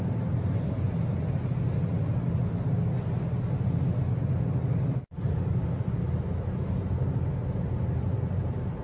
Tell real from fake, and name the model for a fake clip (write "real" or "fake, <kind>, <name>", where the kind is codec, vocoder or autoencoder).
real